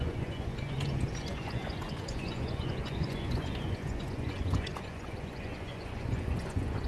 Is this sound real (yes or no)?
no